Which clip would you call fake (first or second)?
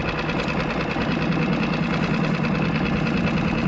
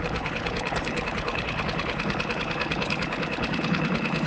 second